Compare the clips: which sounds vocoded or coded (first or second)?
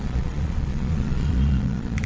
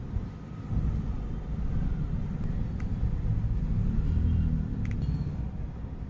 first